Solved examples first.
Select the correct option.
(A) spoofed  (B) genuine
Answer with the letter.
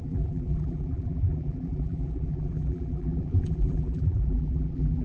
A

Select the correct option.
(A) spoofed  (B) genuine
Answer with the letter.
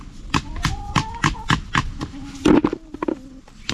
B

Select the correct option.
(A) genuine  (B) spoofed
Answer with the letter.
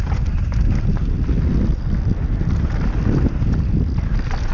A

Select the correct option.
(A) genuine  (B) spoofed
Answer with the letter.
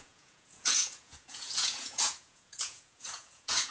B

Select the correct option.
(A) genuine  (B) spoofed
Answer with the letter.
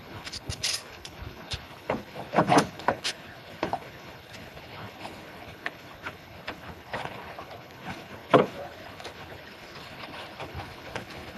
B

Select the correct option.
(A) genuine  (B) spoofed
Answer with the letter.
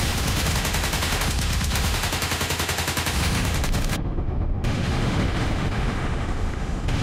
B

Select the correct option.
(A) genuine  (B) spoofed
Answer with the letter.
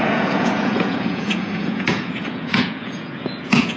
B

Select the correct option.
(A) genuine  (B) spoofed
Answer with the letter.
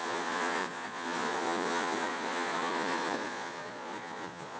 B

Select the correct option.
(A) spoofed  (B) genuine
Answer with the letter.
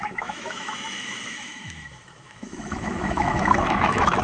A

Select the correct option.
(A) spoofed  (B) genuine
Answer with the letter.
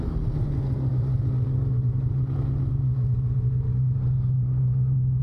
B